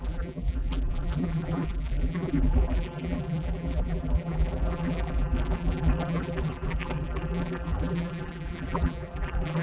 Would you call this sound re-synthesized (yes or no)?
yes